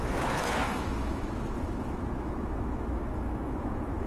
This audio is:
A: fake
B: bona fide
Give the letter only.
A